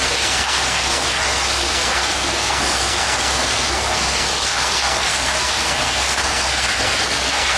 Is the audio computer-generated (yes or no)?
yes